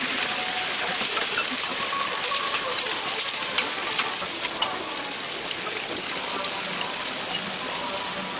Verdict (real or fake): real